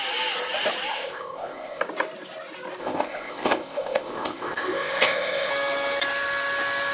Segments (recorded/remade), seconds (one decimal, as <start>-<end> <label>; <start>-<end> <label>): 0.0-0.9 recorded; 0.9-1.8 remade; 1.8-2.8 recorded; 2.8-5.5 remade; 5.5-6.9 recorded